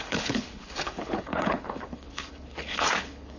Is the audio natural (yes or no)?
no